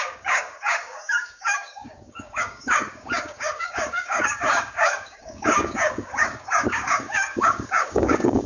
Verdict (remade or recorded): remade